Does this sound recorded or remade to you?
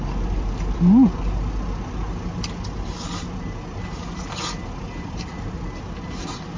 recorded